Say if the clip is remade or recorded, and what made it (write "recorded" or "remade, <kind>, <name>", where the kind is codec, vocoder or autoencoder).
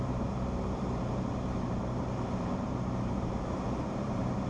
remade, vocoder, BigVGAN v2